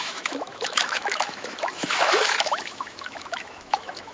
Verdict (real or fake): fake